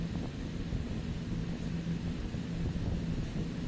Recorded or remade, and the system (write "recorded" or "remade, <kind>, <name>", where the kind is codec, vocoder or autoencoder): recorded